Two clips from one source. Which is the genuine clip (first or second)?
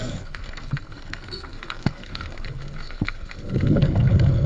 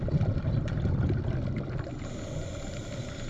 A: second